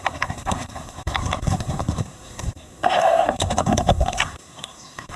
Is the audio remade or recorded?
remade